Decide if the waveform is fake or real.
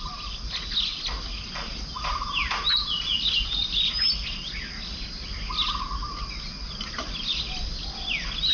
real